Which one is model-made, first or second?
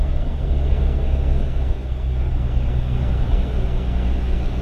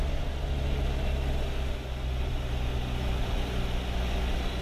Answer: first